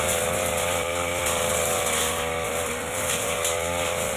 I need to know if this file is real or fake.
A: real